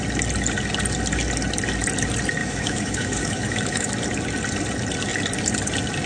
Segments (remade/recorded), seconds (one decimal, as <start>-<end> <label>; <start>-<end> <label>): 0.0-2.4 recorded; 2.4-3.9 remade; 3.9-6.1 recorded